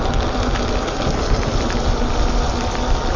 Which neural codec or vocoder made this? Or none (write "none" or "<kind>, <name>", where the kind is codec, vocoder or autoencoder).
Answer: none